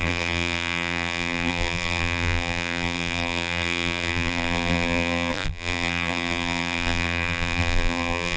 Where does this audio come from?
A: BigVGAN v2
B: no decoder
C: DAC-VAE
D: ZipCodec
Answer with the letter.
A